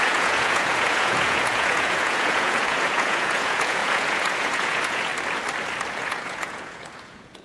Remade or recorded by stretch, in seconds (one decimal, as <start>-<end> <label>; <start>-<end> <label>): 0.0-5.1 remade; 5.1-5.9 recorded; 5.9-7.4 remade